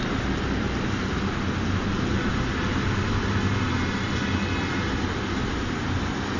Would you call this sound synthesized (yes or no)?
no